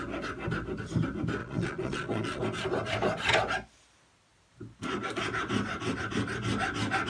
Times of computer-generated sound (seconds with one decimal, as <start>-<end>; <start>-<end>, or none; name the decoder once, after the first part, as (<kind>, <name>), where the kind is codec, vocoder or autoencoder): 1.4-2.4 (vocoder, Vocos)